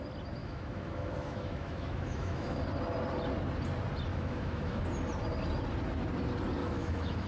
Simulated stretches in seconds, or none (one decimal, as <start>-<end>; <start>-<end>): 0.4-2.6; 4.1-4.8; 6.6-7.3